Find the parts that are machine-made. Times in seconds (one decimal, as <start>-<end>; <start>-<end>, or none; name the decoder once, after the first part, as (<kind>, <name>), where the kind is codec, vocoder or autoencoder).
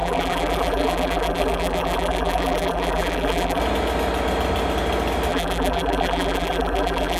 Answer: 0.0-3.6 (vocoder, BigVGAN v2); 5.3-7.2